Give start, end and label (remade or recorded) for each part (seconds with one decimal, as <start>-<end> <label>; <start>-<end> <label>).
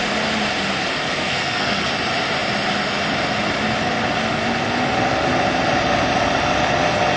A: 0.0-1.0 recorded; 1.0-1.9 remade; 1.9-7.2 recorded